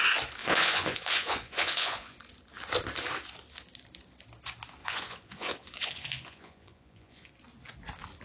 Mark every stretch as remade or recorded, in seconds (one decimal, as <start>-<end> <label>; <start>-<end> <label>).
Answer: 0.0-0.4 recorded; 0.4-2.2 remade; 2.2-4.8 recorded; 4.8-7.3 remade; 7.3-8.2 recorded

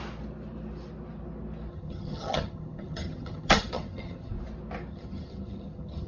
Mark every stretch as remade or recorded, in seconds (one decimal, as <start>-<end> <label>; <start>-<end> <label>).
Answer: 0.0-1.7 recorded; 1.7-4.3 remade; 4.3-4.9 recorded; 4.9-6.1 remade

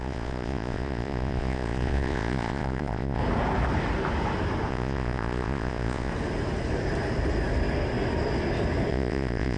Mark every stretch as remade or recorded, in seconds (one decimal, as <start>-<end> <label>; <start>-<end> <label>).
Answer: 0.0-3.2 remade; 3.2-4.7 recorded; 4.7-6.1 remade; 6.1-8.9 recorded; 8.9-9.6 remade

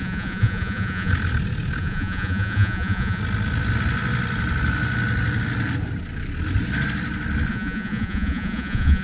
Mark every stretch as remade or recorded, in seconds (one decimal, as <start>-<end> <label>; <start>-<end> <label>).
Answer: 0.0-1.1 remade; 1.1-1.8 recorded; 1.8-3.2 remade; 3.2-7.5 recorded; 7.5-9.0 remade

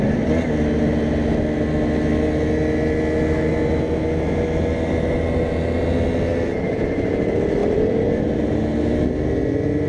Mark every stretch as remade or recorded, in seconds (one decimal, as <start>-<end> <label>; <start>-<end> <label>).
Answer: 0.0-6.3 recorded; 6.3-6.9 remade; 6.9-7.6 recorded; 7.6-8.5 remade; 8.5-9.9 recorded